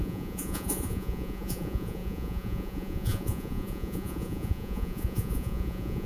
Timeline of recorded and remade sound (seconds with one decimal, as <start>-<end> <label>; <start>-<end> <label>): 0.0-6.1 remade